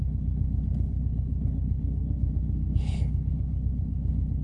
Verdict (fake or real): fake